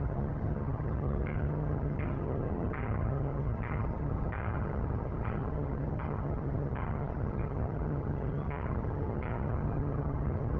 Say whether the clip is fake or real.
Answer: fake